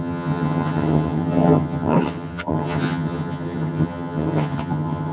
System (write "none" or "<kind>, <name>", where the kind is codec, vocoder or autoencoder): vocoder, HiFi-GAN